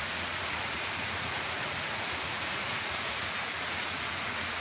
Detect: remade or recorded remade